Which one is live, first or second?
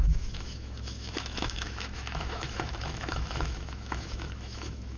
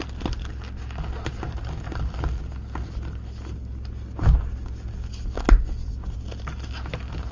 second